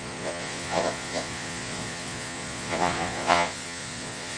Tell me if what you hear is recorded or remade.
remade